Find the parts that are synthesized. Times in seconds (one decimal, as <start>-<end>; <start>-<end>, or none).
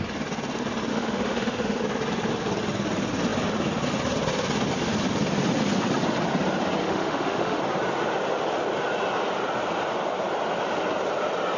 0.9-1.8; 6.8-7.6